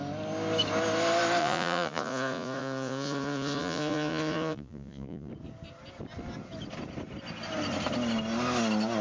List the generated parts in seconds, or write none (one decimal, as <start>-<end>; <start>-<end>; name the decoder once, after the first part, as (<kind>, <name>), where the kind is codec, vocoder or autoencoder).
1.4-5.3 (vocoder, Vocos)